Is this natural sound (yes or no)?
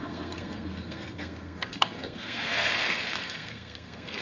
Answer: no